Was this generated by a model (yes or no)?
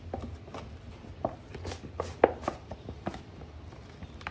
yes